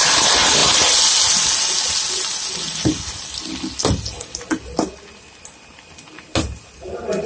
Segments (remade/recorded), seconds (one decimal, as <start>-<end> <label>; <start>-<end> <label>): 0.0-7.3 recorded